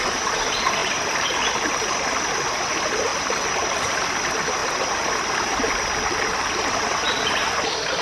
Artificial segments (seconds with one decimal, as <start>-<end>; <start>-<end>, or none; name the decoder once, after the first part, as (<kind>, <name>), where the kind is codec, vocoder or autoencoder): 0.8-2.3 (vocoder, BigVGAN v2); 3.1-4.1